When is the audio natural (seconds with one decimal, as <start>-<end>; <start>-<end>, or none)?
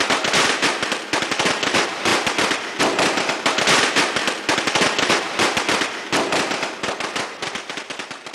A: 0.0-8.3